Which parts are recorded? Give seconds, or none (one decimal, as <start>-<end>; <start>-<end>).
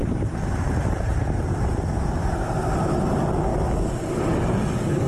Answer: 2.8-5.1